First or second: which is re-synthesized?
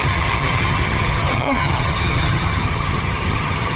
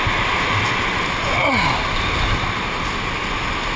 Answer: first